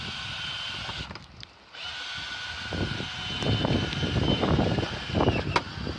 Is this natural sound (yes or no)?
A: yes